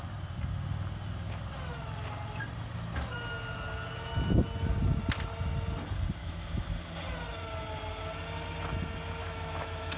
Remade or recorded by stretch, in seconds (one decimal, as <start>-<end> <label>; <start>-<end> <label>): 0.0-6.2 recorded; 6.2-6.8 remade; 6.8-9.2 recorded; 9.2-10.0 remade